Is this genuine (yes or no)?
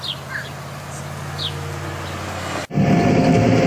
yes